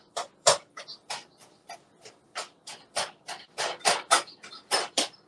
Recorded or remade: remade